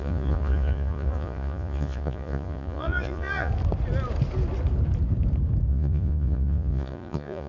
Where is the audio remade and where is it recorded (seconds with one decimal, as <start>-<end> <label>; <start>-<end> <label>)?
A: 0.0-3.5 remade; 3.5-5.7 recorded; 5.7-7.5 remade